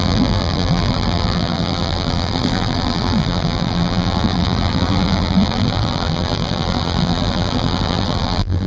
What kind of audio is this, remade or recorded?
remade